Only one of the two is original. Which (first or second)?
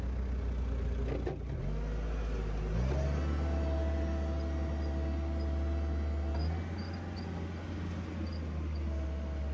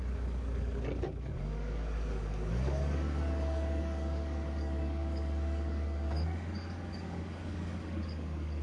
first